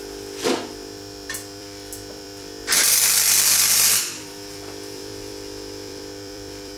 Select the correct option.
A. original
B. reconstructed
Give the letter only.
B